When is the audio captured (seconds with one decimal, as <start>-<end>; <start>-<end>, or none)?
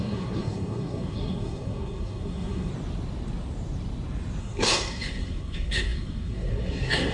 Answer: 2.7-4.4